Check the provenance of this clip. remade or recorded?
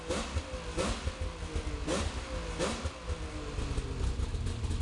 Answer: recorded